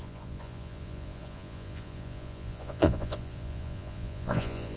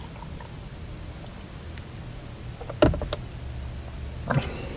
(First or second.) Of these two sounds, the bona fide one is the second